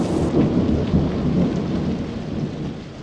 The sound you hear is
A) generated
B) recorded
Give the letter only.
B